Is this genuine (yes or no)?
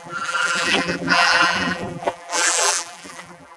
no